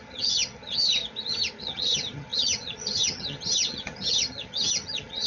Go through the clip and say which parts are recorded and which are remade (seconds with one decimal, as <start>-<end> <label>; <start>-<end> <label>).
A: 0.0-1.0 remade; 1.0-1.6 recorded; 1.6-5.3 remade